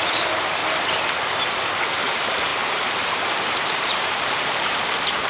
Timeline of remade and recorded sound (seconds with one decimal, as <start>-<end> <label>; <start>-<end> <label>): 0.0-0.6 remade; 0.6-2.0 recorded; 2.0-5.3 remade